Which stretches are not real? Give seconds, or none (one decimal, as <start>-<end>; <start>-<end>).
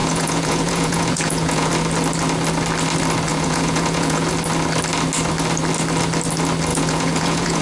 0.0-1.7; 3.3-4.3; 6.7-7.6